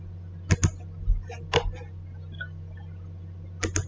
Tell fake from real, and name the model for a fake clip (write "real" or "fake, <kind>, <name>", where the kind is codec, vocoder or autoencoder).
real